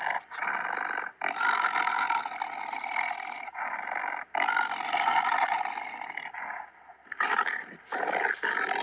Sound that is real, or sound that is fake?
real